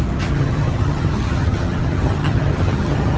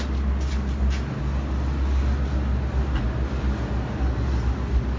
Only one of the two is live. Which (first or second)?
second